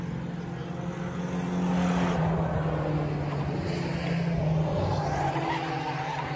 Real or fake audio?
real